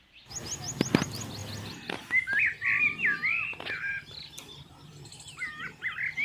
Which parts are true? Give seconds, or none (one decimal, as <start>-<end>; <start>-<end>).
0.0-6.2